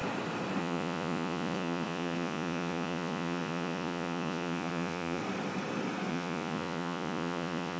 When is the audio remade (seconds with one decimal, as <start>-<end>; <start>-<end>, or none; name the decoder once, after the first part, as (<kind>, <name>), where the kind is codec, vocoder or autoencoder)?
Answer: 0.6-5.2 (vocoder, Vocos); 6.1-7.8